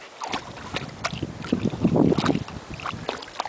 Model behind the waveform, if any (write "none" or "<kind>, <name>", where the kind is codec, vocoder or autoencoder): none